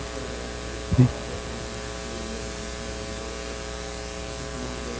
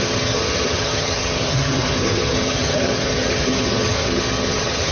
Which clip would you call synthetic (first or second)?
second